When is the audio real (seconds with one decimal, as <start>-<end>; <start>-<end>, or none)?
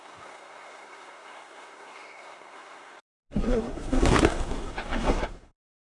none